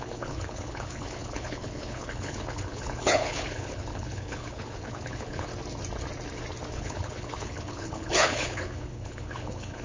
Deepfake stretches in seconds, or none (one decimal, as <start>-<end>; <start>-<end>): 0.0-5.5; 6.7-9.8

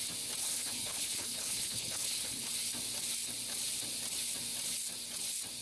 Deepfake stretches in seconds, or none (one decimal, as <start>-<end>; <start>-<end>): 0.4-2.5

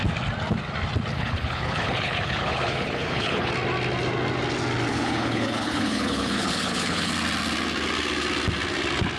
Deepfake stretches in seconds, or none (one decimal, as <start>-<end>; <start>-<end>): 1.1-3.5; 4.9-7.1

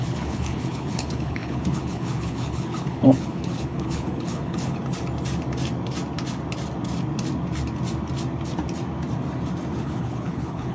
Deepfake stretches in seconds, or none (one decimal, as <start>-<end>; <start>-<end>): 0.0-4.8; 9.8-10.7

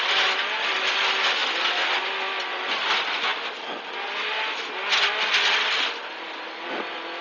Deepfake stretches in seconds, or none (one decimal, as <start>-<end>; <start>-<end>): none

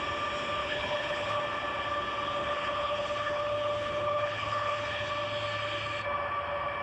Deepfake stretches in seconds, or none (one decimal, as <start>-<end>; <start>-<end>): 0.6-1.4; 2.4-5.1

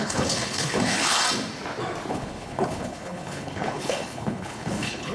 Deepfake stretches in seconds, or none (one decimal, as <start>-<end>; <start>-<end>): 0.0-1.2; 2.1-5.1